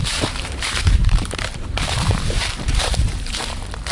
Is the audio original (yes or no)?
no